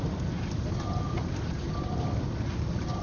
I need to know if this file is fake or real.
real